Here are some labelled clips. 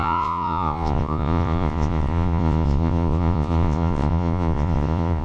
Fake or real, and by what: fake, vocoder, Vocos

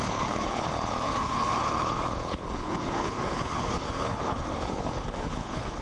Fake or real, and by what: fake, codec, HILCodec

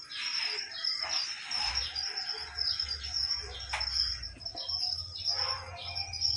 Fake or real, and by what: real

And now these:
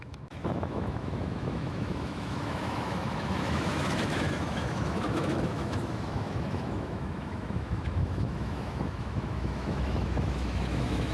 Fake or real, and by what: fake, autoencoder, DAC-VAE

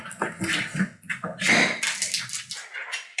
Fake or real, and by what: real